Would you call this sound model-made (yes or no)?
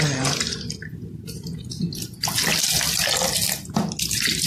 no